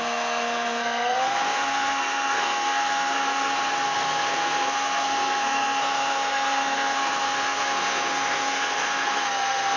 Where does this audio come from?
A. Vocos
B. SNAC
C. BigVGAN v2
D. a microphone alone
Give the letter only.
B